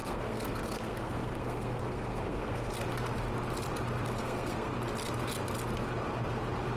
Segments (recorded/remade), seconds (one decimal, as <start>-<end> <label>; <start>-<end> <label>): 0.0-2.7 remade; 2.7-4.2 recorded; 4.2-4.7 remade; 4.7-6.8 recorded